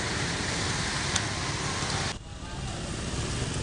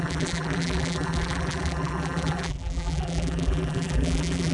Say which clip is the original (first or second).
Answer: first